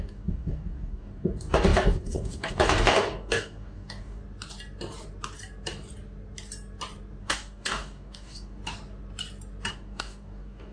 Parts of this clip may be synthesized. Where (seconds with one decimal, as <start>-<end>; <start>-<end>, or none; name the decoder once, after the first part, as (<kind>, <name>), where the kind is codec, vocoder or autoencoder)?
0.0-4.2 (codec, DAC); 7.2-8.6; 9.7-10.7

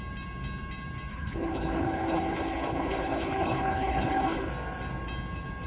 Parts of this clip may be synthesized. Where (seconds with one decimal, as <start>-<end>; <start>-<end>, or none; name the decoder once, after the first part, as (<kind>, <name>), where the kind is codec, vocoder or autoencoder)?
1.1-4.5 (codec, HILCodec)